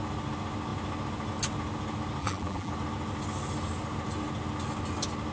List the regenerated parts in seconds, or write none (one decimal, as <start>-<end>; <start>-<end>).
2.2-2.7